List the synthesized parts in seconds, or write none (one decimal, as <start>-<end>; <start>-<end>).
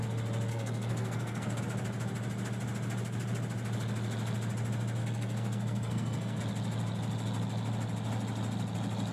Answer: 0.5-1.6; 5.0-6.4